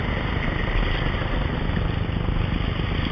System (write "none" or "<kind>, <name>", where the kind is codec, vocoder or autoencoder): none